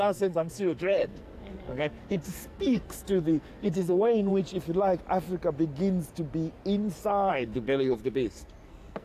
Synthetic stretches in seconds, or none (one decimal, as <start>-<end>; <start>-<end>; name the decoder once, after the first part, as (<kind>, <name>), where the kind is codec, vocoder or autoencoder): 0.0-4.3 (codec, SNAC); 7.3-9.0